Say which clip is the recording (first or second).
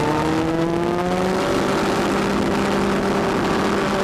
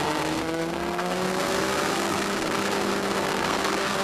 first